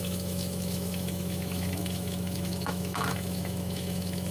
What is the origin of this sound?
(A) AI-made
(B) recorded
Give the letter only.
A